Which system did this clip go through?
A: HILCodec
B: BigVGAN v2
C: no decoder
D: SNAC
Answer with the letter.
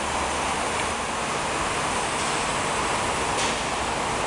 C